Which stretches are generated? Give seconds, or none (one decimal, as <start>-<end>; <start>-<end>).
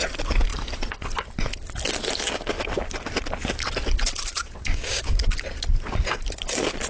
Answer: 4.6-5.2